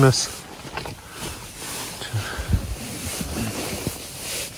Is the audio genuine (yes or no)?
yes